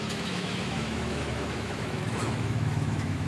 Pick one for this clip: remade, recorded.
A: remade